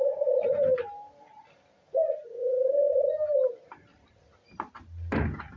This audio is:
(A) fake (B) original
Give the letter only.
B